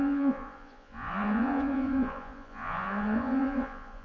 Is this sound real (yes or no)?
no